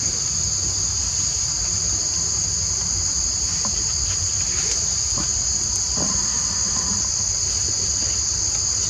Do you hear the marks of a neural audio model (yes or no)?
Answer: no